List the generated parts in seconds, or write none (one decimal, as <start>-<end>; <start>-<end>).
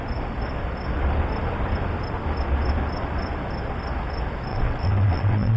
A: 4.5-5.6